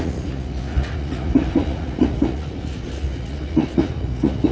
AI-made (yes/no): yes